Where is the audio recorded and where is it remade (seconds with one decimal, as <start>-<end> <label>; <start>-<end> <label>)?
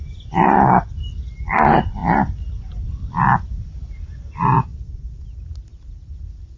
0.0-6.6 recorded